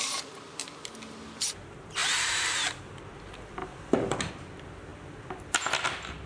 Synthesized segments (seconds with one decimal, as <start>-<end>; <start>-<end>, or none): 2.0-2.8; 3.6-4.3